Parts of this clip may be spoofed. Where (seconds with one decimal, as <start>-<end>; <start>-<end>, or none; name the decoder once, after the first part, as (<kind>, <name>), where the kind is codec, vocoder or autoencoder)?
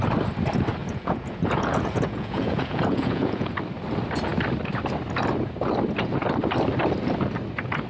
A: 0.8-3.5 (vocoder, Vocos)